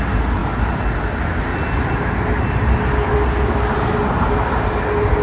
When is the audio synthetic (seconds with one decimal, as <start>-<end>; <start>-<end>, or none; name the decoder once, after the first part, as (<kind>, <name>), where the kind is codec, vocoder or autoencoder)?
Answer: none